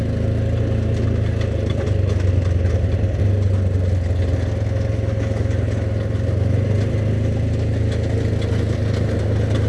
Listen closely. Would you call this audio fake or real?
real